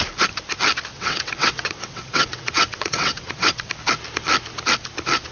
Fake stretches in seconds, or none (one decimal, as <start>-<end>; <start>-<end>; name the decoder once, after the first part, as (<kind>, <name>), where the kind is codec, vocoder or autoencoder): 0.9-3.7 (vocoder, WaveNeXt)